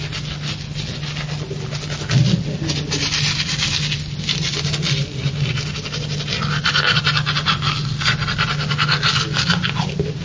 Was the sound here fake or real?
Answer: real